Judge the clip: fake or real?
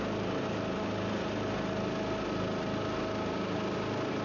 real